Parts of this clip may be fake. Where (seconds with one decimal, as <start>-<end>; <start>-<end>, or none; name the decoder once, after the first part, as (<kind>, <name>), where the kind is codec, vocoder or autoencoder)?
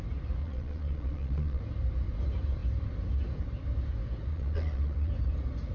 0.4-1.6 (vocoder, Vocos); 4.3-5.1